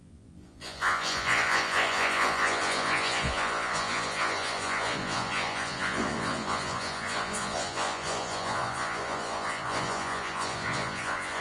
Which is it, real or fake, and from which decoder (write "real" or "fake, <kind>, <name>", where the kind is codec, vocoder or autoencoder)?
fake, vocoder, Vocos